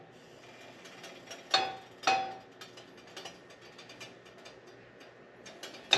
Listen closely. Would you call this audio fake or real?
real